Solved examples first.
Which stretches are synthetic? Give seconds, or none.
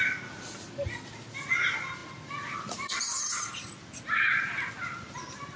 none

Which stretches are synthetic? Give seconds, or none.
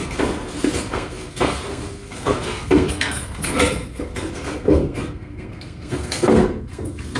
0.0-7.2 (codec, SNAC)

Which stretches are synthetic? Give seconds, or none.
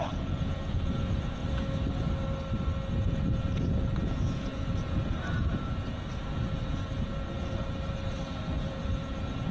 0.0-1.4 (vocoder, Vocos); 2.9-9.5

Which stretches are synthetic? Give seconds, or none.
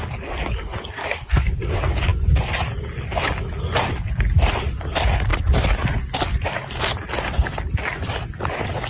1.0-1.6 (codec, DAC)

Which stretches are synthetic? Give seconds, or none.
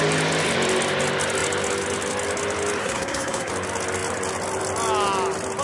2.8-3.5 (codec, SNAC)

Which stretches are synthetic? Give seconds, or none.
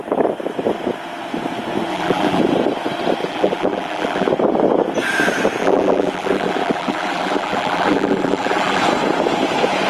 1.9-2.4 (vocoder, BigVGAN v2); 3.2-4.3; 5.6-8.8